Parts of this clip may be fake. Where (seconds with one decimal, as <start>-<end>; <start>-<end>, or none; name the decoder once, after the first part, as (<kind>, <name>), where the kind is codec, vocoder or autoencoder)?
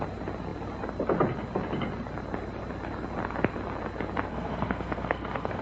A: 4.3-5.6 (codec, SNAC)